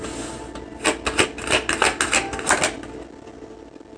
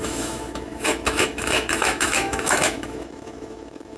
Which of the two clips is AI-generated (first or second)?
second